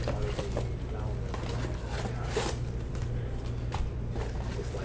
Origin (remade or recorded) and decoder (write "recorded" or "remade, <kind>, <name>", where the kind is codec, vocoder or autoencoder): recorded